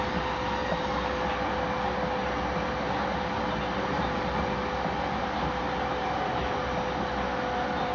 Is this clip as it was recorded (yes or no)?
yes